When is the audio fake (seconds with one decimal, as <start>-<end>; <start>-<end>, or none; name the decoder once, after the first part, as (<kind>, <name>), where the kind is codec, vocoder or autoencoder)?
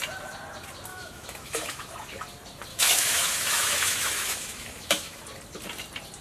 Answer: 0.9-1.9 (autoencoder, DAC-VAE); 2.7-5.2